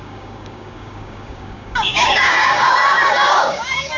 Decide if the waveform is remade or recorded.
remade